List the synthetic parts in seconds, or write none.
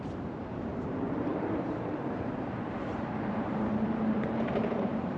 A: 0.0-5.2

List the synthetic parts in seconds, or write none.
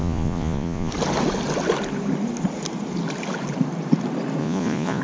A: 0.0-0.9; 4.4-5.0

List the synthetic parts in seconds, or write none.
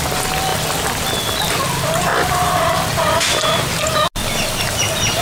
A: none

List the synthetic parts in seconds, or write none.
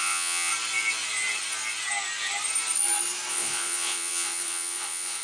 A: 0.0-0.5; 3.3-5.2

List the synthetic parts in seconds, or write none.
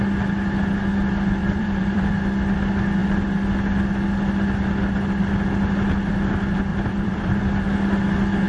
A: 1.4-2.1; 6.7-7.4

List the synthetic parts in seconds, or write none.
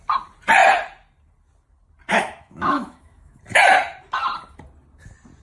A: 2.1-3.4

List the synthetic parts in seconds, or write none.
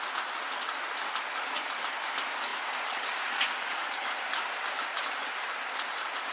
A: none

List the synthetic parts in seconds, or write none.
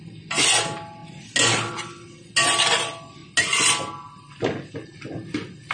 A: none